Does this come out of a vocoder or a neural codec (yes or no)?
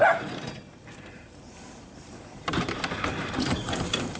yes